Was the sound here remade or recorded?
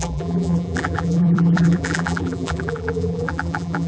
remade